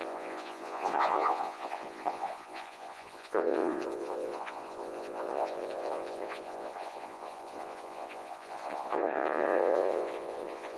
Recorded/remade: remade